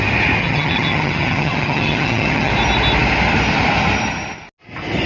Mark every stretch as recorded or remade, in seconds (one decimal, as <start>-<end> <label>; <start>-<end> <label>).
0.0-0.4 recorded; 0.4-2.5 remade; 2.5-5.1 recorded